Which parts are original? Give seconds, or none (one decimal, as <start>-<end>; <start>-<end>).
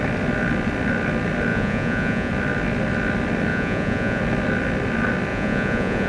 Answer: 0.0-1.5; 2.3-3.5; 4.2-5.3